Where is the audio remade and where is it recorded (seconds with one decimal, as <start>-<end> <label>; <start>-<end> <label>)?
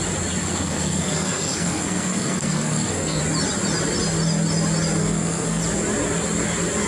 0.0-0.4 recorded; 0.4-3.2 remade; 3.2-5.0 recorded; 5.0-5.6 remade; 5.6-6.9 recorded